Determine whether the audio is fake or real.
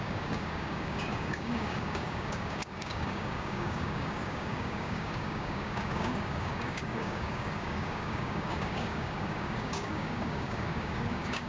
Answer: fake